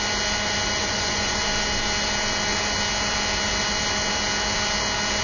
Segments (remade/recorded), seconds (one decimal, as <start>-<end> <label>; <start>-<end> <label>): 0.0-0.8 recorded; 0.8-1.4 remade; 1.4-5.2 recorded